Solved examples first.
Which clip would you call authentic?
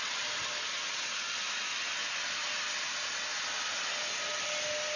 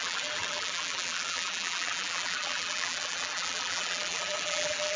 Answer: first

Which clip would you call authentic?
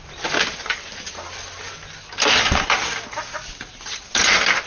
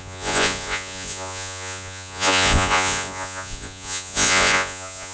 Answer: first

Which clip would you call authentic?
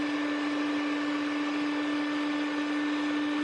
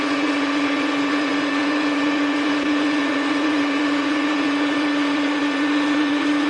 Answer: first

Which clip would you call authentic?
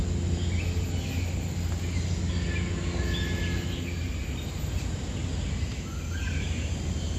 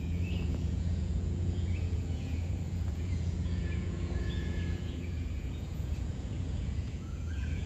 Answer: first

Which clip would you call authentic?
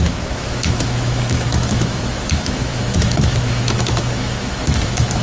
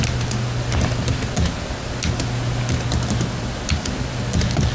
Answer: second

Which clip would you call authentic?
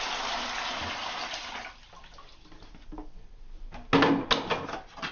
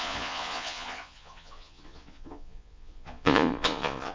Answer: first